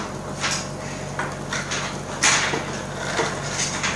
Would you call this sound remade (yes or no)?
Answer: no